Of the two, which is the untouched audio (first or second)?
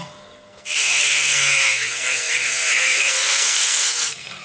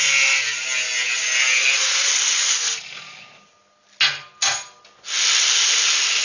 second